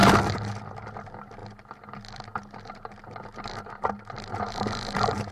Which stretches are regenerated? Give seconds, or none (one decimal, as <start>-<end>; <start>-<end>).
0.7-1.4; 4.3-5.3